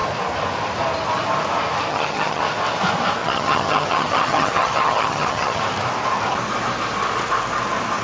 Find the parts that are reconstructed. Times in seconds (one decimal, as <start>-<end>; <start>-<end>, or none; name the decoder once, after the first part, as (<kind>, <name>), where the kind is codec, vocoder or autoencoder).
1.9-2.4 (vocoder, HiFi-GAN); 3.2-5.6